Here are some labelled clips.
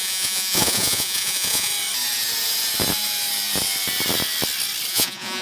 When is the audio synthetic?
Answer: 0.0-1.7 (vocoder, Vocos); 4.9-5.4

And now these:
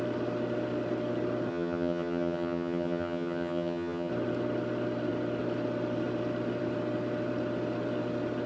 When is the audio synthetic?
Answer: 1.5-4.1 (vocoder, HiFi-GAN)